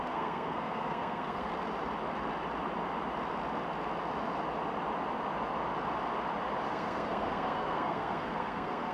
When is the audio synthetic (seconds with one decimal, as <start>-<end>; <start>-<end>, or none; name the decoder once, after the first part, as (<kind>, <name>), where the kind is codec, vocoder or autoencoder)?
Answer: 0.0-1.5 (codec, SNAC); 6.7-8.9